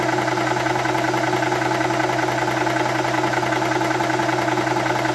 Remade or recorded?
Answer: recorded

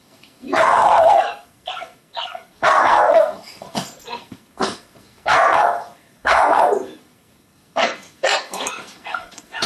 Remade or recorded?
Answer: remade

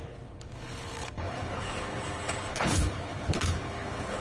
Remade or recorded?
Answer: remade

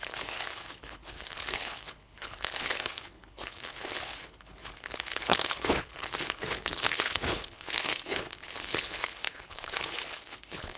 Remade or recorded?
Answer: remade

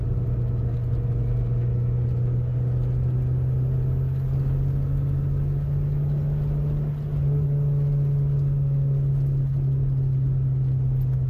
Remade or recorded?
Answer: recorded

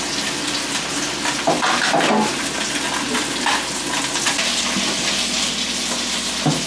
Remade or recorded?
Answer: recorded